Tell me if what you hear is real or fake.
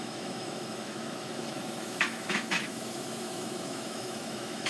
fake